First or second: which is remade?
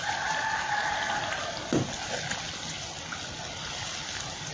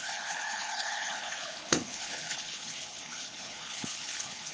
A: second